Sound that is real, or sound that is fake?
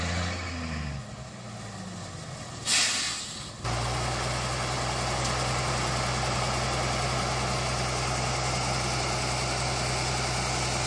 real